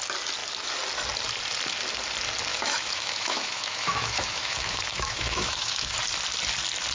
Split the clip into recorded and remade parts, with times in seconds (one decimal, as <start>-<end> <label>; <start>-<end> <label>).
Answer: 0.0-2.5 recorded; 2.5-6.0 remade; 6.0-6.9 recorded